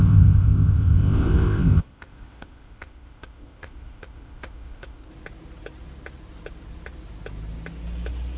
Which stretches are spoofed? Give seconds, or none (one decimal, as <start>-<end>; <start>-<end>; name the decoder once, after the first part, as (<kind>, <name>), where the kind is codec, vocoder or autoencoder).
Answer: 0.0-5.1 (codec, ZipCodec)